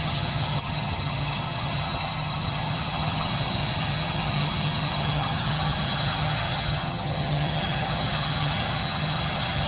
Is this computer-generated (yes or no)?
yes